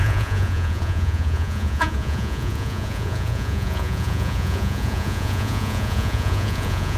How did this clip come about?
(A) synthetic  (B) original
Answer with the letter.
A